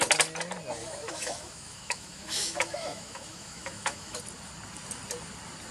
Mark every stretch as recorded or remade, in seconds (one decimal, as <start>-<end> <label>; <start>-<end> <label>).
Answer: 0.0-0.8 recorded; 0.8-4.2 remade; 4.2-5.7 recorded